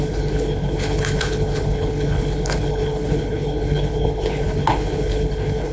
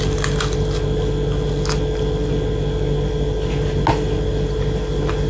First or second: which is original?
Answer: second